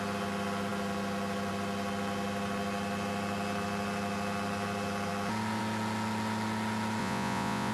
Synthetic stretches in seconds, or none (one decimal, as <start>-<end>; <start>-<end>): 7.0-7.7